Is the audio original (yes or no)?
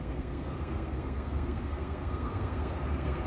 no